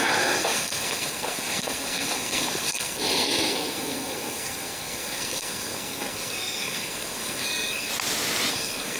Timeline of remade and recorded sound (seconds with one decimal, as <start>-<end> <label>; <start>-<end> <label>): 0.0-7.9 remade; 7.9-8.5 recorded; 8.5-9.0 remade